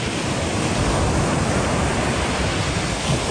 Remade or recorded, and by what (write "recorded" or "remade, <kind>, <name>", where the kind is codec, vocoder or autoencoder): recorded